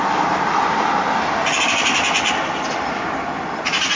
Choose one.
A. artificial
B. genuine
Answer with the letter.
B